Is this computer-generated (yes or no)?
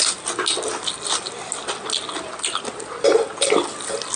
no